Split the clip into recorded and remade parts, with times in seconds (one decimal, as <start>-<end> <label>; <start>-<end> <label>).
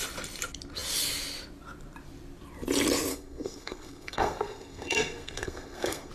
0.0-3.1 recorded; 3.1-6.1 remade